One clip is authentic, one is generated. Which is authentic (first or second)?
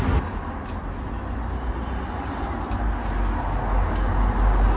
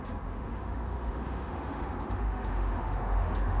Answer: first